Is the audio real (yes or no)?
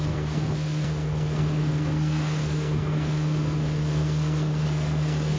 no